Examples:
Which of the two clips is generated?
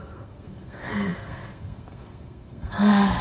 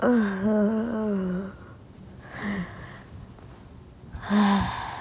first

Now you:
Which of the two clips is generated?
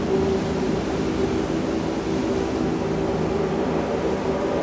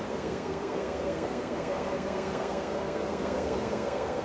second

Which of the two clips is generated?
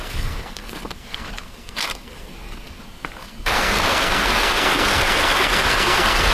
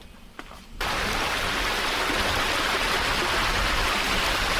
first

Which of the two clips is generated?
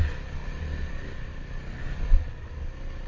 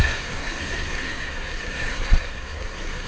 second